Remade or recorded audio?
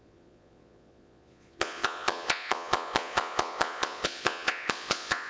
remade